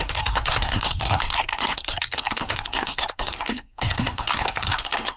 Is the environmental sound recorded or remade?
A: remade